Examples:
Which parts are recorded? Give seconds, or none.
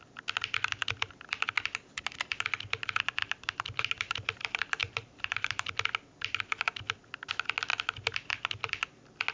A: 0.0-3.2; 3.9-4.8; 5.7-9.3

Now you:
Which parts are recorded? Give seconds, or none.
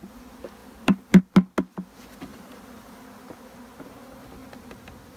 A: 0.0-0.6; 1.2-2.3; 3.0-5.2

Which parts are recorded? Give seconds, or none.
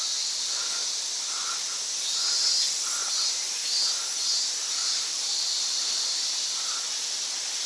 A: 0.0-4.8; 6.3-7.7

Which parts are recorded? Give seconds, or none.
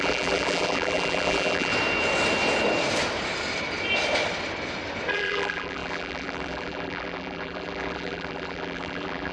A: 1.7-5.1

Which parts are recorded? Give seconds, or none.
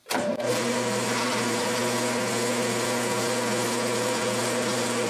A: 1.8-4.4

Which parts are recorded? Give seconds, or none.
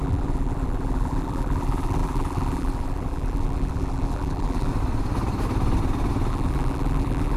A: 4.7-6.3